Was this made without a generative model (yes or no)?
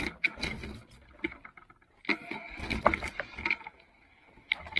yes